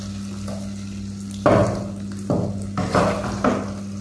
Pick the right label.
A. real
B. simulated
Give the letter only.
A